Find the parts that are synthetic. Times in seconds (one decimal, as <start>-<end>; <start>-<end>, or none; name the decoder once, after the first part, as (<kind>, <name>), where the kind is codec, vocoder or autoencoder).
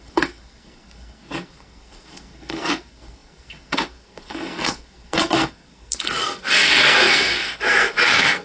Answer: 0.0-8.4 (codec, SNAC)